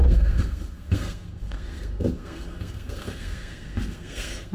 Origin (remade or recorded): remade